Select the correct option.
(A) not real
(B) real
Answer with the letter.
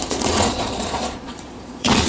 A